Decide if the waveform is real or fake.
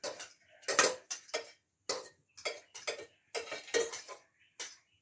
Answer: real